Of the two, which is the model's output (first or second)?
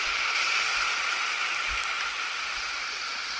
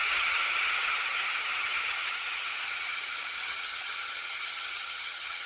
second